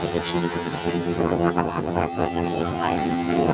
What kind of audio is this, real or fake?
fake